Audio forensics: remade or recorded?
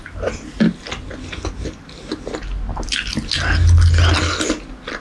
recorded